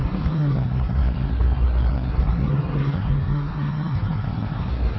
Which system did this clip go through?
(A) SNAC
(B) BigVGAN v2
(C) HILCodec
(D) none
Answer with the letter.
A